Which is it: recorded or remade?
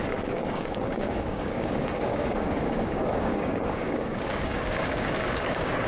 remade